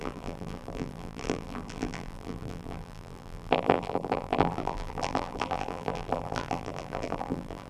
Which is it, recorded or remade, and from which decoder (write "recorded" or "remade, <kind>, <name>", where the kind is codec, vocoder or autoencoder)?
remade, vocoder, BigVGAN v2